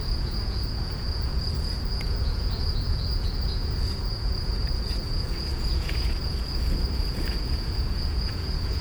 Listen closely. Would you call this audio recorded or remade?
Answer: remade